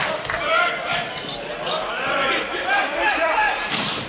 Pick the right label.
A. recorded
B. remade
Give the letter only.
A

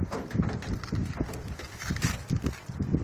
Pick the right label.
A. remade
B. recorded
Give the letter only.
A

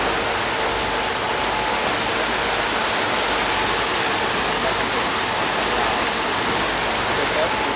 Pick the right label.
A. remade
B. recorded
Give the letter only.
B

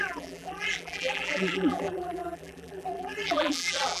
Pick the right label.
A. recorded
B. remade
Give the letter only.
B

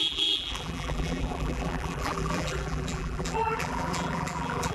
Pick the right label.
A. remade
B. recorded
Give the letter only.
A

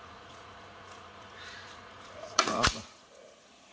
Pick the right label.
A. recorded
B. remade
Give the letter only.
B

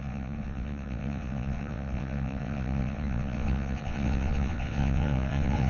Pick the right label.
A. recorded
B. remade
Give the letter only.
B